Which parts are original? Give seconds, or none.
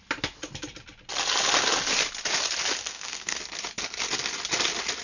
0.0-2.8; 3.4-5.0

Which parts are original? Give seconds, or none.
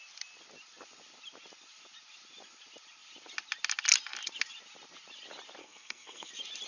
0.0-5.6; 6.3-6.7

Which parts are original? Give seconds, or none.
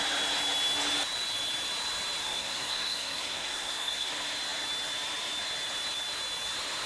0.0-2.2; 4.1-6.9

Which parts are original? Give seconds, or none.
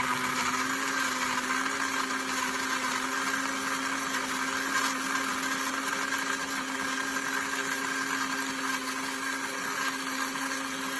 0.0-11.0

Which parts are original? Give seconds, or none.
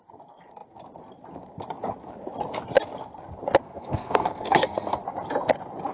0.0-3.6; 5.0-5.9